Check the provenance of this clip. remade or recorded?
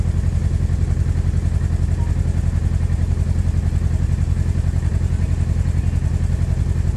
recorded